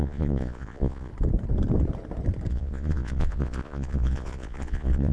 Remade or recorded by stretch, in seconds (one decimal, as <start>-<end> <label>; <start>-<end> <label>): 0.0-1.1 remade; 1.1-2.5 recorded; 2.5-5.1 remade